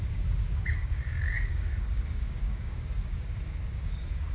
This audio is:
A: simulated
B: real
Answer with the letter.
A